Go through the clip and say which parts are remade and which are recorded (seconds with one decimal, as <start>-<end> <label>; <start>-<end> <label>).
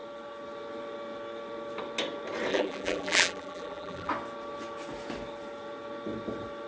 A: 0.0-2.5 recorded; 2.5-4.1 remade; 4.1-6.7 recorded